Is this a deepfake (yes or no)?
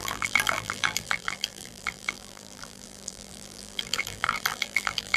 yes